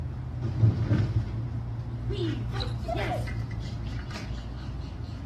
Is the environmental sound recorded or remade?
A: recorded